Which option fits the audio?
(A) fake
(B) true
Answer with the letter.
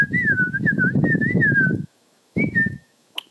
A